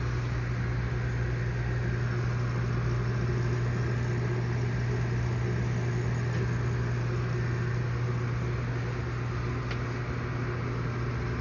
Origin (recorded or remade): recorded